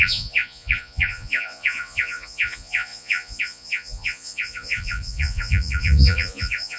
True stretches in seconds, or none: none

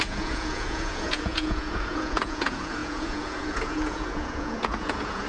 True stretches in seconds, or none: none

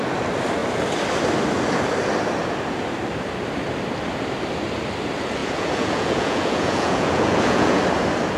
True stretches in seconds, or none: 0.0-5.4; 7.8-8.4

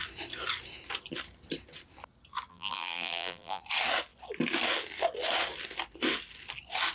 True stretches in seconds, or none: 0.0-2.5; 3.6-6.9

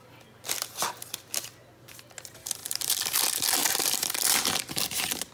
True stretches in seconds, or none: 0.0-2.6; 3.2-3.6; 4.4-5.3

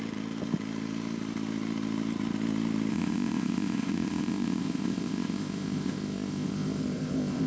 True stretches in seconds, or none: 0.0-2.9

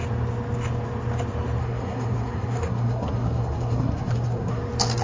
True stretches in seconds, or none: 0.0-1.6; 4.6-5.0

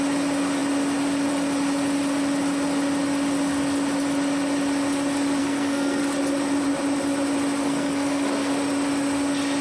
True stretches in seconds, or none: 0.0-5.4; 6.0-7.6; 8.5-9.6